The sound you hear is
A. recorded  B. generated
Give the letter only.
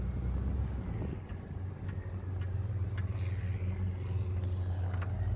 A